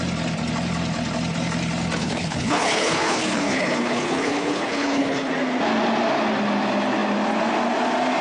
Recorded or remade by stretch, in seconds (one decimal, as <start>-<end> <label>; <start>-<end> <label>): 0.0-2.0 recorded; 2.0-5.3 remade; 5.3-8.2 recorded